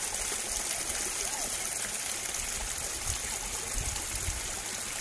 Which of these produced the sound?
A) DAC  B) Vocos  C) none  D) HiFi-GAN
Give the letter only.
C